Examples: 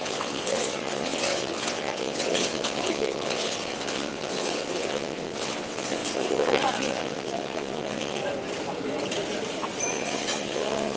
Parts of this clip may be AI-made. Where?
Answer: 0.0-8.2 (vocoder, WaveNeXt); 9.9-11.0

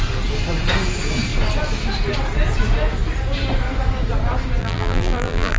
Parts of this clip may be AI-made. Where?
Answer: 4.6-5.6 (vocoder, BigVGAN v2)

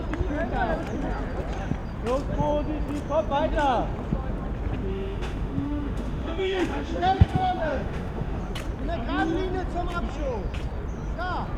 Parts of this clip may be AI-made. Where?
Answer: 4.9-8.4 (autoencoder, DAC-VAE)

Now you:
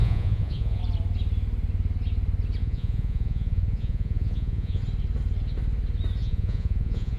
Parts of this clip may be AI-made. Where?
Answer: 0.0-0.8 (vocoder, Vocos); 2.6-4.8; 6.2-7.2

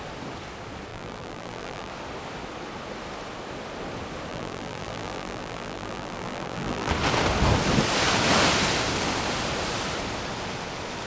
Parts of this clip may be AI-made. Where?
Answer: 0.9-1.9 (vocoder, BigVGAN v2); 4.3-6.9

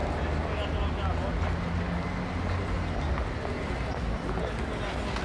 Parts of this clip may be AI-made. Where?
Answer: none

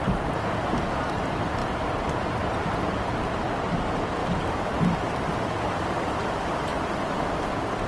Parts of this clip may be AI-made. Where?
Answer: 1.6-3.5 (vocoder, BigVGAN v2); 4.2-6.2; 6.7-7.3